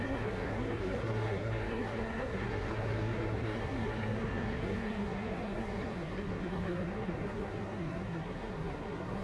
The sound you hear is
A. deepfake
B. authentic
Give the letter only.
A